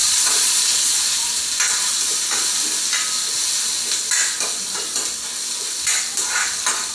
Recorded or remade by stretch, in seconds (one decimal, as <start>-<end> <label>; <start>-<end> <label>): 0.0-0.9 remade; 0.9-6.9 recorded